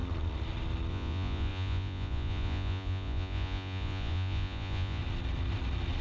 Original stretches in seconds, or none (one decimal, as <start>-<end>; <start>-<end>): 0.0-0.9; 5.0-6.0